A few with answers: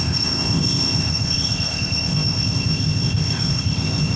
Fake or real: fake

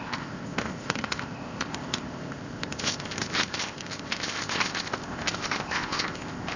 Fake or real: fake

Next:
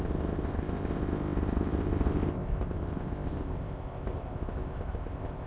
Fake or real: fake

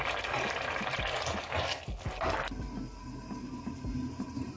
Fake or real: real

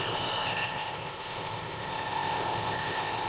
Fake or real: fake